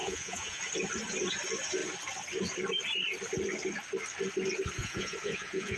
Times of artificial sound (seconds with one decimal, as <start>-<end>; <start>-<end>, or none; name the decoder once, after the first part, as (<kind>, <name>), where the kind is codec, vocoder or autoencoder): 0.0-0.6 (vocoder, Vocos); 4.8-5.8